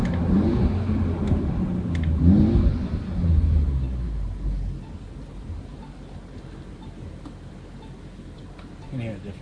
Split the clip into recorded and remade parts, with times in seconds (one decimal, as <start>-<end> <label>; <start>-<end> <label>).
0.0-9.4 recorded

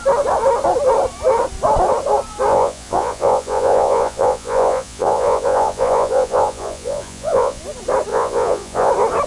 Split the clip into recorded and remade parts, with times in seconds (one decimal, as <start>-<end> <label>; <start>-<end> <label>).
0.0-2.5 recorded; 2.5-7.6 remade; 7.6-8.1 recorded; 8.1-8.9 remade; 8.9-9.3 recorded

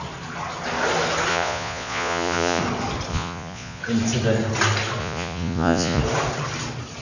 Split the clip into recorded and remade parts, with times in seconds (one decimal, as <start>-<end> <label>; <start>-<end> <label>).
0.0-1.3 recorded; 1.3-2.6 remade; 2.6-3.1 recorded; 3.1-3.8 remade; 3.8-5.0 recorded; 5.0-6.0 remade; 6.0-7.0 recorded

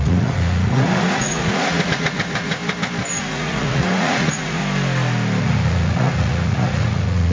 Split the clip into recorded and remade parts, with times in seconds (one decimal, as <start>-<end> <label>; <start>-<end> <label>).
0.0-2.6 remade; 2.6-3.2 recorded; 3.2-4.6 remade; 4.6-5.4 recorded; 5.4-7.3 remade

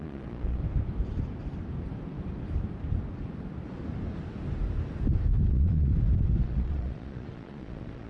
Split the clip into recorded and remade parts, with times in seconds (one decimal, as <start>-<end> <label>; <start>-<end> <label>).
0.0-0.6 remade; 0.6-5.5 recorded; 5.5-5.9 remade; 5.9-6.4 recorded; 6.4-8.1 remade

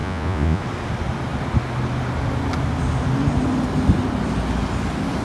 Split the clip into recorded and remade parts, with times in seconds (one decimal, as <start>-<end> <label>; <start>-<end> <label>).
0.0-0.6 remade; 0.6-5.2 recorded

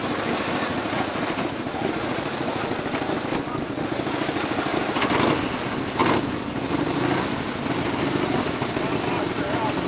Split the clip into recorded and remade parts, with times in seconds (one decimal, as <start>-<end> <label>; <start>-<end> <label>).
0.0-0.7 recorded; 0.7-2.8 remade; 2.8-9.9 recorded

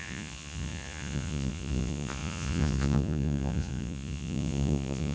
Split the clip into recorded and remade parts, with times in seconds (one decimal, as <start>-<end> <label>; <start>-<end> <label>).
0.0-5.1 remade